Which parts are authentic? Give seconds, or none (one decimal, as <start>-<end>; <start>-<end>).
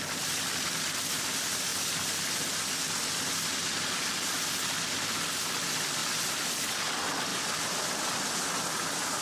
0.0-7.3; 8.0-9.2